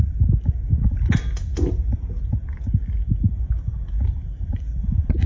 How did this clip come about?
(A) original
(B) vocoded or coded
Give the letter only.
A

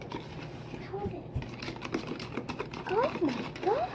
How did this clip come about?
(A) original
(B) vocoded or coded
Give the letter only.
A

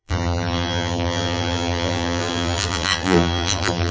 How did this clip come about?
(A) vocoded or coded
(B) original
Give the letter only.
A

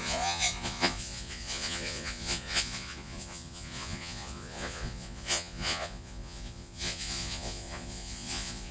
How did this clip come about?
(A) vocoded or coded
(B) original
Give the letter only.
A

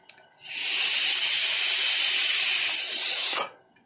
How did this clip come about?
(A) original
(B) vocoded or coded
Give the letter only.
A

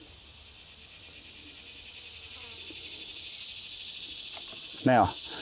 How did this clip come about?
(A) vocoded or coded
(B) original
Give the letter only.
B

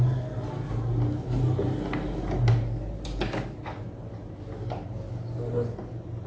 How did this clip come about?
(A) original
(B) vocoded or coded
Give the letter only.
A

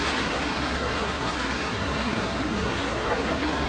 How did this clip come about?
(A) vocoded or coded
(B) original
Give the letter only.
A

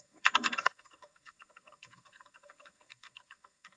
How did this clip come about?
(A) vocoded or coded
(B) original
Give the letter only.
A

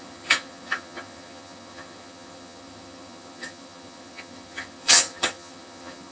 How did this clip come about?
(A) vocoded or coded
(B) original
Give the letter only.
A